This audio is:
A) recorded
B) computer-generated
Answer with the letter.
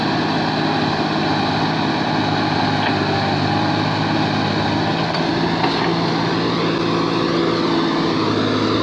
A